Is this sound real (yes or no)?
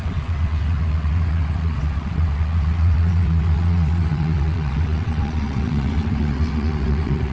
no